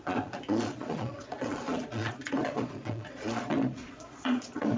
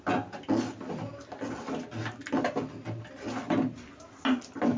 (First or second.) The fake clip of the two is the first